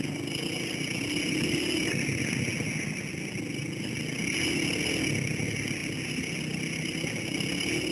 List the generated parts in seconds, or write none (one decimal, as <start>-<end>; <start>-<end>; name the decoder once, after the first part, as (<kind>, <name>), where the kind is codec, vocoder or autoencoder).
none